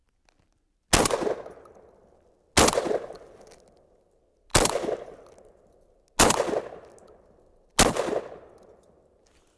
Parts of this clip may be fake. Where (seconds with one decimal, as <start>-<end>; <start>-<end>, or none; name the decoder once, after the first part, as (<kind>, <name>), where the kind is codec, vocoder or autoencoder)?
none